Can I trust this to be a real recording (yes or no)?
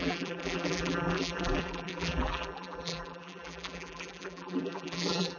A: no